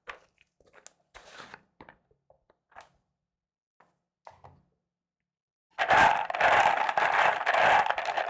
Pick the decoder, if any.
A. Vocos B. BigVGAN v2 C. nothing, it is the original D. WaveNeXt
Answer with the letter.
C